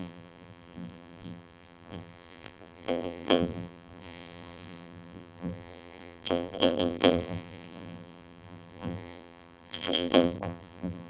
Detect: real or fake fake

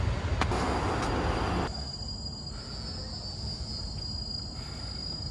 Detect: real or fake real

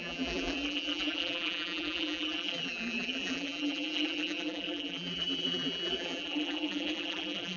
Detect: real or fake fake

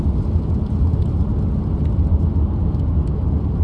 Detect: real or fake real